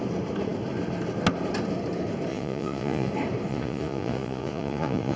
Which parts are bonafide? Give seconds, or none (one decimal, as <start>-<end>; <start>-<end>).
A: 0.0-2.3; 3.1-3.5